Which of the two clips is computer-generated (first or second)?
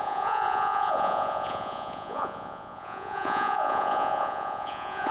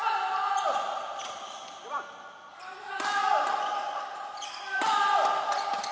first